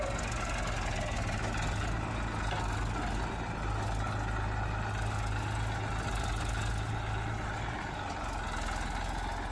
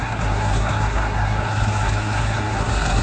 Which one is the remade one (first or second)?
second